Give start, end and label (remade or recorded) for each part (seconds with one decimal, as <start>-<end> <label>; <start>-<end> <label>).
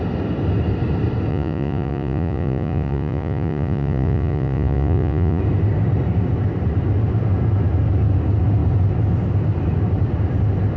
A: 0.0-1.3 recorded; 1.3-5.4 remade; 5.4-10.8 recorded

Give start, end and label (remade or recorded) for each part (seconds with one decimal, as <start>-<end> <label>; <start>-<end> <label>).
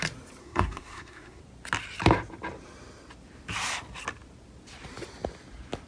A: 0.0-0.4 recorded; 0.4-1.4 remade; 1.4-5.9 recorded